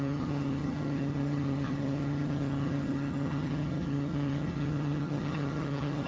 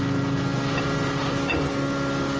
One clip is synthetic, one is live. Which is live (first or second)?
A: second